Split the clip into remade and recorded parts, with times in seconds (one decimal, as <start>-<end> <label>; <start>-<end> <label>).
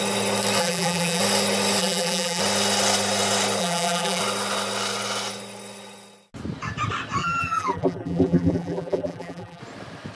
0.0-0.6 recorded; 0.6-1.2 remade; 1.2-1.8 recorded; 1.8-2.4 remade; 2.4-3.6 recorded; 3.6-4.2 remade; 4.2-7.2 recorded; 7.2-9.6 remade; 9.6-10.1 recorded